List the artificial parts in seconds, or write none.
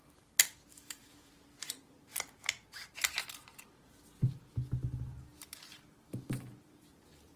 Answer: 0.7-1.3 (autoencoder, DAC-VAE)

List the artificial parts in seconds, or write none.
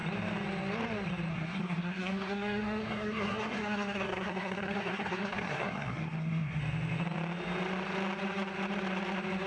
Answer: 1.3-6.6 (codec, SNAC)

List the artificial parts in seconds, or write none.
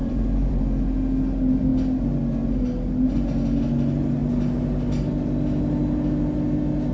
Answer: 0.0-0.6 (vocoder, BigVGAN v2)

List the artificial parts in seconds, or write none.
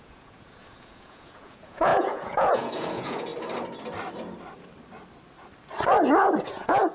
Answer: 0.0-3.3 (vocoder, Vocos); 6.4-6.9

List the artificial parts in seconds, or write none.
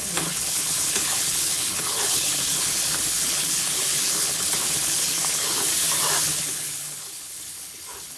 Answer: 0.0-5.7 (codec, HILCodec); 6.2-8.2